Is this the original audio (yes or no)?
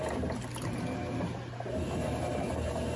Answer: yes